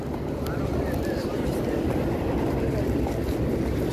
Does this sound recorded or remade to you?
recorded